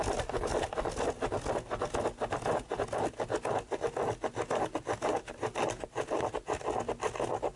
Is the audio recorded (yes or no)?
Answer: yes